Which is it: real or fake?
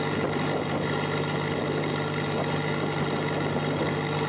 real